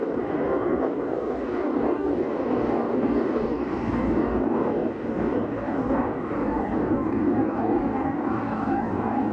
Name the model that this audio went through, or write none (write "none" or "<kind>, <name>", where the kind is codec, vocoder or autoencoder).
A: codec, DAC